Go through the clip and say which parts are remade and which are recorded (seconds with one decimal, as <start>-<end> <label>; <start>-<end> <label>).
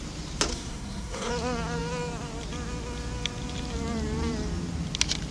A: 0.0-0.5 recorded; 0.5-1.3 remade; 1.3-5.3 recorded